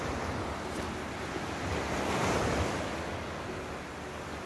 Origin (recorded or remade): recorded